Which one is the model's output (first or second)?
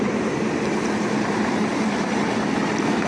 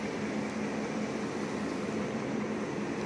first